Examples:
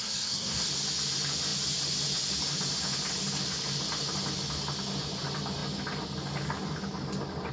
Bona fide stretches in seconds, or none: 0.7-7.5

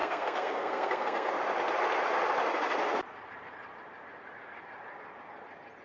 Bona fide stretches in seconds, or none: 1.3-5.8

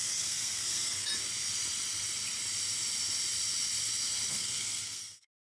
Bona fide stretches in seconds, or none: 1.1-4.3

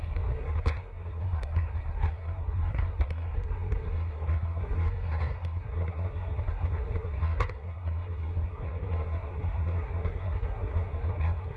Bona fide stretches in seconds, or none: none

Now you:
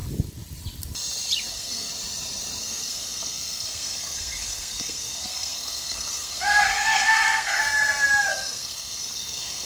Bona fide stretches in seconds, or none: 0.0-1.5; 1.9-2.6; 7.6-8.3

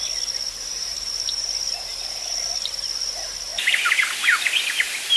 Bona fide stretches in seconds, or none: 0.0-5.2

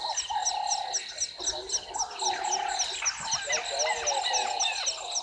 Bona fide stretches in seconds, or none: 0.0-5.2